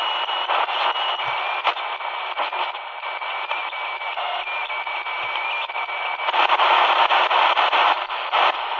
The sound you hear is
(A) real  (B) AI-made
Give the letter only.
A